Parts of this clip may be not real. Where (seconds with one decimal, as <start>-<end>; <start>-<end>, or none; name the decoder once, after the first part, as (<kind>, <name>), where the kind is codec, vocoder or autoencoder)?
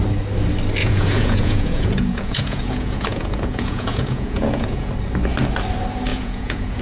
0.8-4.9 (vocoder, Vocos); 6.1-6.8